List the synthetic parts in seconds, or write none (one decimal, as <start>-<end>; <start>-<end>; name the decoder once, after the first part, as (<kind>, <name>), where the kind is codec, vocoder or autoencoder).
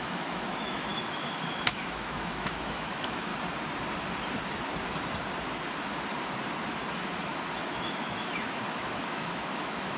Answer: 0.0-3.3 (autoencoder, DAC-VAE); 7.6-10.0